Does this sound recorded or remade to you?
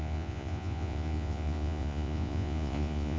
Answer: remade